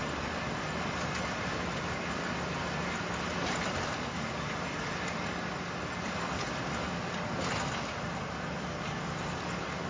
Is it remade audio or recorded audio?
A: recorded